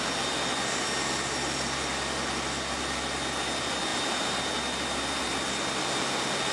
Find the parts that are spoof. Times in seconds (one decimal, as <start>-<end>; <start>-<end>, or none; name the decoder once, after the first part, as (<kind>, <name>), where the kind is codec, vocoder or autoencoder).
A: none

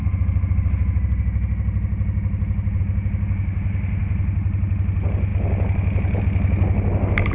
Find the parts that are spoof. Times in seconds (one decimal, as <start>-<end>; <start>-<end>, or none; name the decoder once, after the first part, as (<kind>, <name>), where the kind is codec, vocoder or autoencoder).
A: none

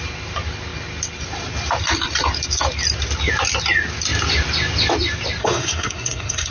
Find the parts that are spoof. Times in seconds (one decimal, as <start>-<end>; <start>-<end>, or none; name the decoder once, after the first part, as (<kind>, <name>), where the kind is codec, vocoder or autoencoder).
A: 5.4-6.5 (codec, SNAC)

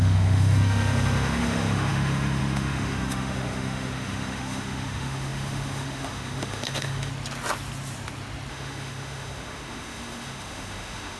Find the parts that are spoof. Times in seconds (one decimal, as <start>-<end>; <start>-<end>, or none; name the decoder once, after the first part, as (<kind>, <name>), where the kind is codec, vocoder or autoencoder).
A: 0.0-7.1 (autoencoder, DAC-VAE); 8.5-11.2

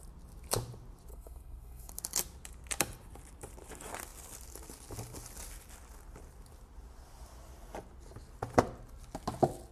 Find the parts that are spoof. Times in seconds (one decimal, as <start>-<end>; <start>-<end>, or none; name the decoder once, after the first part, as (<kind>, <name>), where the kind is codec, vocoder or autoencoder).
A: 1.1-1.9 (codec, SNAC)

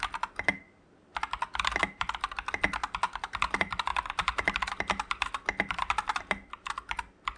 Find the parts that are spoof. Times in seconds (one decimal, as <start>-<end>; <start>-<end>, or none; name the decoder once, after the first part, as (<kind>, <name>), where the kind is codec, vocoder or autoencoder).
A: none